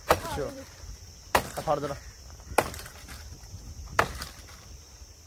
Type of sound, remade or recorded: remade